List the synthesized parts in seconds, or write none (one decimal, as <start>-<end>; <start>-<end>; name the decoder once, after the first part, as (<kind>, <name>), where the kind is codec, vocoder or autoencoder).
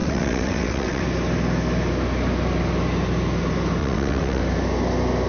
0.0-1.0 (vocoder, WaveNeXt); 3.8-4.4